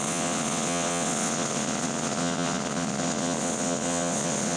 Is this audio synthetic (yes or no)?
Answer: yes